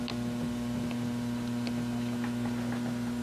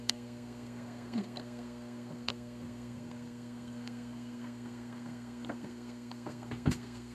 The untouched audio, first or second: first